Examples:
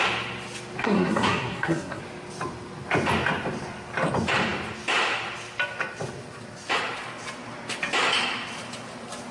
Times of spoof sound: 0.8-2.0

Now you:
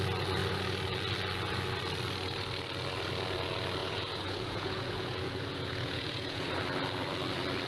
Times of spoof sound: 3.8-6.6

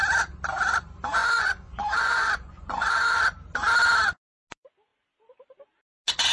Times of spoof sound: 1.2-3.2

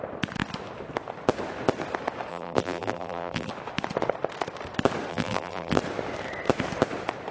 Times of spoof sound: 2.3-3.5; 5.1-5.8

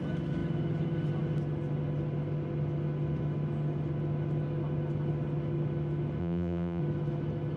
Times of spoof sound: 6.2-6.8

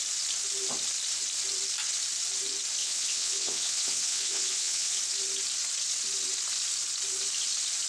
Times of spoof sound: 2.8-5.0

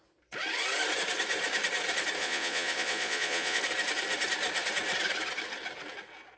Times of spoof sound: 2.2-3.6